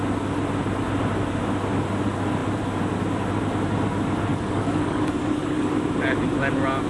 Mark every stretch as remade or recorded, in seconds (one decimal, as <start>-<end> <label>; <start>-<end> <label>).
0.0-4.3 recorded; 4.3-5.7 remade; 5.7-6.9 recorded